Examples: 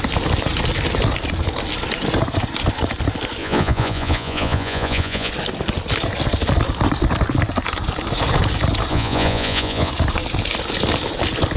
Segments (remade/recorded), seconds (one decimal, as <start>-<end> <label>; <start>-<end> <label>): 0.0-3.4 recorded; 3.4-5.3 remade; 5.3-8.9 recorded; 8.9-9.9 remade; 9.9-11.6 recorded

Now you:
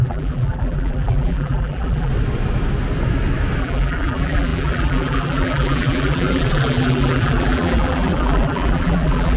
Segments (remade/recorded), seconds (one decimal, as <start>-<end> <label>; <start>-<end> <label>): 0.0-2.1 remade; 2.1-3.6 recorded; 3.6-9.4 remade

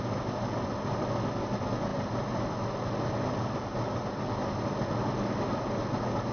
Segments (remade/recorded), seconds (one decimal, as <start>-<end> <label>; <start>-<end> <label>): 0.0-6.3 recorded

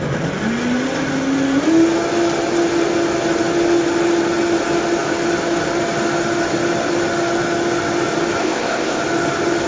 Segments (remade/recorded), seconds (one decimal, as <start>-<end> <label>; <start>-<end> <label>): 0.0-8.4 recorded; 8.4-9.0 remade; 9.0-9.7 recorded

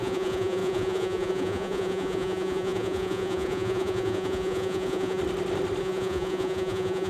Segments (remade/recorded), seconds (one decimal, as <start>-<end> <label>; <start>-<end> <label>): 0.0-5.2 remade; 5.2-5.8 recorded; 5.8-7.1 remade

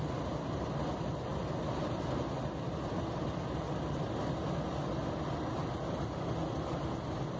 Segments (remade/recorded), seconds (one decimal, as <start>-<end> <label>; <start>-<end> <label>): 0.0-7.4 recorded